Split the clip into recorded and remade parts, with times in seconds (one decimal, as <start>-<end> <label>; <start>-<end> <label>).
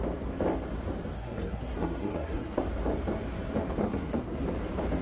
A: 0.0-1.1 recorded; 1.1-2.6 remade; 2.6-3.8 recorded; 3.8-4.4 remade; 4.4-5.0 recorded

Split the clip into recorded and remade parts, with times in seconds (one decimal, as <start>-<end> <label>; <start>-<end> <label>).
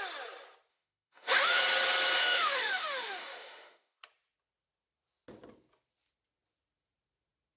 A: 0.0-0.7 recorded; 0.7-1.6 remade; 1.6-2.2 recorded; 2.2-4.0 remade; 4.0-7.6 recorded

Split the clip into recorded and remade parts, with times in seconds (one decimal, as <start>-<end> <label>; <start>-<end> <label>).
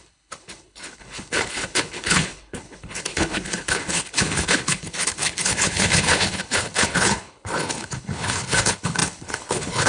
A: 0.0-9.9 remade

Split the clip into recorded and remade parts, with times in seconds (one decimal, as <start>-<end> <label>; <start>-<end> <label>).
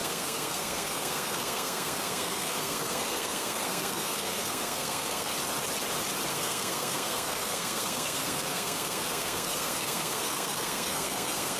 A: 0.0-5.3 remade; 5.3-6.3 recorded; 6.3-11.6 remade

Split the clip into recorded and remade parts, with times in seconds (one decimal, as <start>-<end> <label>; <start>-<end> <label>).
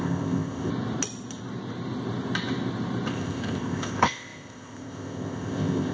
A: 0.0-0.7 remade; 0.7-3.1 recorded; 3.1-5.9 remade